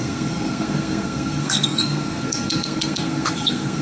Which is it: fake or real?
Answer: fake